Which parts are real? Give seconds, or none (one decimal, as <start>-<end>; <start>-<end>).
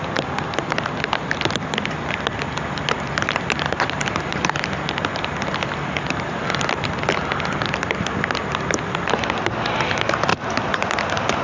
0.0-11.4